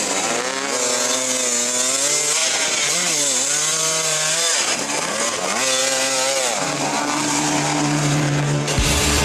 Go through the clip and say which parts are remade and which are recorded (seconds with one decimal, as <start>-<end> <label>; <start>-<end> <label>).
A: 0.0-2.4 recorded; 2.4-5.1 remade; 5.1-5.8 recorded; 5.8-9.2 remade